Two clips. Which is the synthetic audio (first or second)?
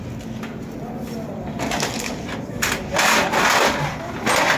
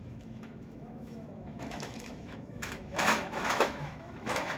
second